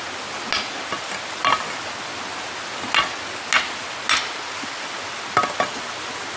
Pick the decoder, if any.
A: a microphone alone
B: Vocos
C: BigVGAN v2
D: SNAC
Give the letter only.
A